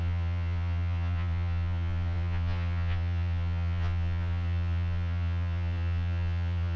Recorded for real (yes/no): no